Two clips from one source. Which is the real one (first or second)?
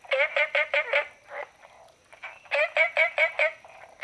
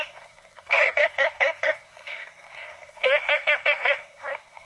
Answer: first